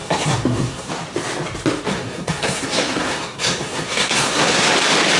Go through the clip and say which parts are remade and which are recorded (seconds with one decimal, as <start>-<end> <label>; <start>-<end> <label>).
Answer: 0.0-0.9 remade; 0.9-1.9 recorded; 1.9-4.7 remade; 4.7-5.2 recorded